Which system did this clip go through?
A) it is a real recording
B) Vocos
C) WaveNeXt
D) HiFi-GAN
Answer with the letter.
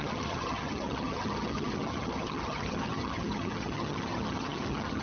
D